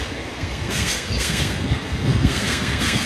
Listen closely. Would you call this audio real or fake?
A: fake